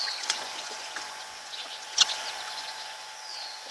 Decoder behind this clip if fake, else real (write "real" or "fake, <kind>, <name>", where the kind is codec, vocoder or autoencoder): fake, vocoder, Vocos